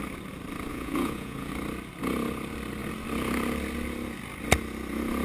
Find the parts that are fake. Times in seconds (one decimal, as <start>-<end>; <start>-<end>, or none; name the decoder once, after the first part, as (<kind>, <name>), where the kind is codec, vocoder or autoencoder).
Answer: 0.7-1.5 (vocoder, Vocos)